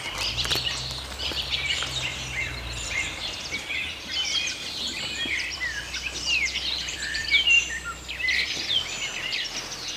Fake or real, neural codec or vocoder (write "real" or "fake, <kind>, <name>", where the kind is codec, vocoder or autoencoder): fake, vocoder, BigVGAN v2